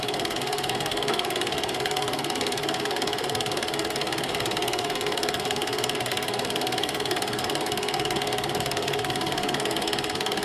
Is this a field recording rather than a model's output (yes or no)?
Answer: no